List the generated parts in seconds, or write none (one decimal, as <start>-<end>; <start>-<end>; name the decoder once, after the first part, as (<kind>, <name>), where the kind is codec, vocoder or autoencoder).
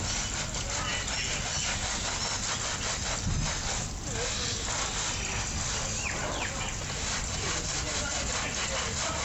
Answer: none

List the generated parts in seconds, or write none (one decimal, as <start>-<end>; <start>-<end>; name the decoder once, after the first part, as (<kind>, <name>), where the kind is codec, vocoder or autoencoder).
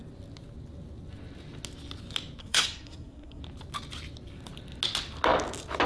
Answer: 2.4-3.4 (codec, SNAC)